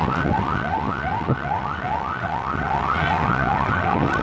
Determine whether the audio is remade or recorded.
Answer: remade